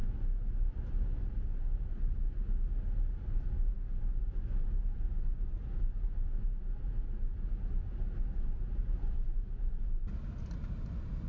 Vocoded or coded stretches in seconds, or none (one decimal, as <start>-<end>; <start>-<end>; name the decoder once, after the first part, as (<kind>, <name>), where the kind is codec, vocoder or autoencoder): none